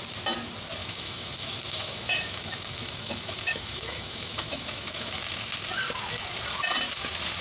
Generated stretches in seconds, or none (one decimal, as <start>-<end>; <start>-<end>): 0.8-5.2